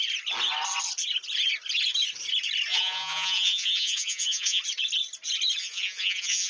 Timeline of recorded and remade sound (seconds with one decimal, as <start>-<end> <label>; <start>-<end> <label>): 0.0-2.7 recorded; 2.7-4.6 remade; 4.6-5.6 recorded; 5.6-6.5 remade

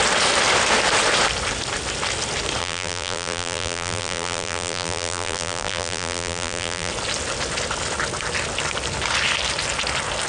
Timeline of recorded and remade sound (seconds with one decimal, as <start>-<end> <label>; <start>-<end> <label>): 0.0-2.6 recorded; 2.6-6.9 remade; 6.9-10.3 recorded